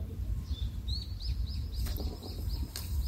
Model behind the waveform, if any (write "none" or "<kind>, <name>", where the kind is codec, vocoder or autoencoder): vocoder, BigVGAN v2